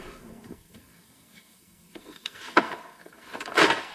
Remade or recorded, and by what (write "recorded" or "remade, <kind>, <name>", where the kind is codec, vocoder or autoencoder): remade, codec, SNAC